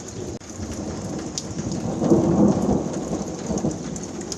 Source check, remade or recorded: recorded